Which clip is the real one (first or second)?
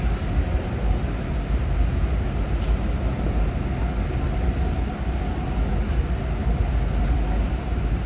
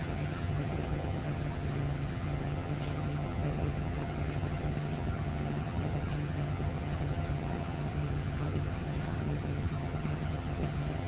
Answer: first